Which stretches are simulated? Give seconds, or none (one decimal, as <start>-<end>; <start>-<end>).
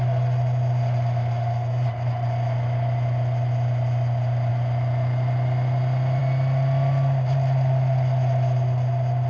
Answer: none